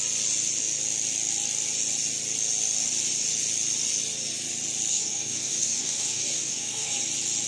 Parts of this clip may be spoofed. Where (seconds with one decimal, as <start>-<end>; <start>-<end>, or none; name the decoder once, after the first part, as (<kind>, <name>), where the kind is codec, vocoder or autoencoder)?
4.9-7.0 (codec, DAC)